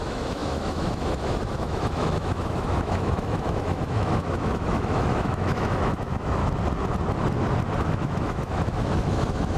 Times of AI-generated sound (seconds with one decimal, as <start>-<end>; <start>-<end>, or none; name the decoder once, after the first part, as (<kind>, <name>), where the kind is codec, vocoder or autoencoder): 0.0-6.4 (autoencoder, DAC-VAE); 7.8-9.6